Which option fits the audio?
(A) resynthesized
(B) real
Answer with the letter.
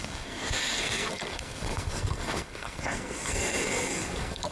A